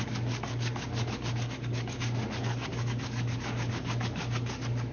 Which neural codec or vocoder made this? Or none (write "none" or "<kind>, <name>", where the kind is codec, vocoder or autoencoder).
codec, DAC